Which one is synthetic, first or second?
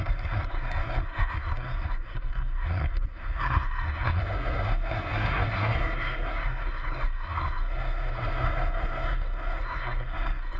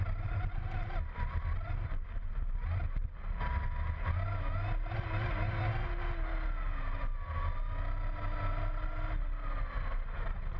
first